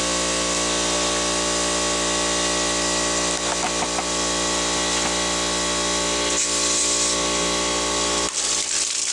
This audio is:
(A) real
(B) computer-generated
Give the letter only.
A